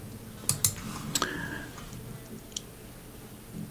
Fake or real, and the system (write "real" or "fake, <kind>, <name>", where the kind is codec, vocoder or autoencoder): real